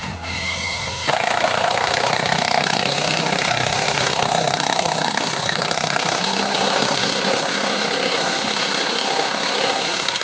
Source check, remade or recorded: remade